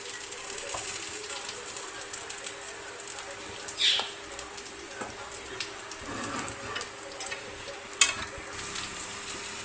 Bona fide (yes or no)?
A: yes